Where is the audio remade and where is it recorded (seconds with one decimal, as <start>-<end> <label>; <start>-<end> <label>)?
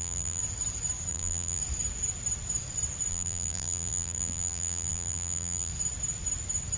0.0-0.4 remade; 0.4-1.1 recorded; 1.1-1.6 remade; 1.6-3.1 recorded; 3.1-5.7 remade; 5.7-6.8 recorded